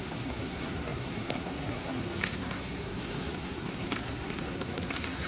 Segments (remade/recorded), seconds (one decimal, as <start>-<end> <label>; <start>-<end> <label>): 0.0-5.3 remade